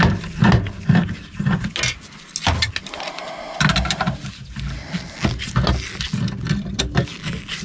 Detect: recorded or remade recorded